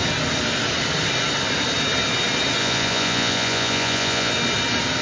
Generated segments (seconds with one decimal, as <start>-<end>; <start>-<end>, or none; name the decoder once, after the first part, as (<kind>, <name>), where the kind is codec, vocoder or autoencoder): 2.6-4.3 (vocoder, Vocos)